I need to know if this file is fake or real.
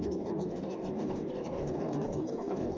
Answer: fake